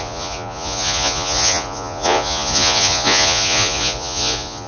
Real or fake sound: fake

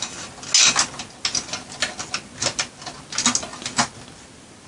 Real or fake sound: real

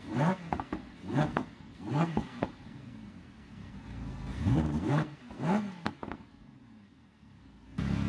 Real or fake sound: fake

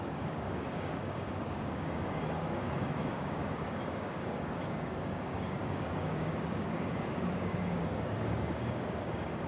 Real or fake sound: fake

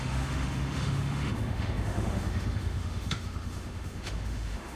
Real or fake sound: fake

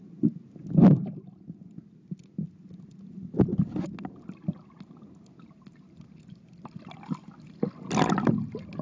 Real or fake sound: real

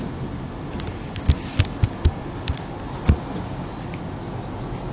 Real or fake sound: real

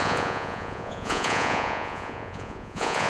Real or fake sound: fake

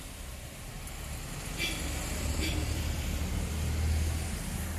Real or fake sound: real